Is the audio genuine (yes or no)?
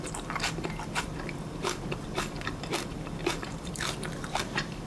no